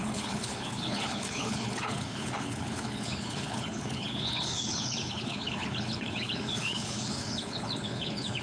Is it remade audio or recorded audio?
remade